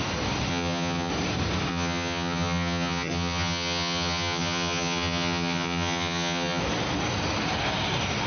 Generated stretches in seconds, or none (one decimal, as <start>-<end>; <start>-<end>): 0.5-1.1; 1.7-6.6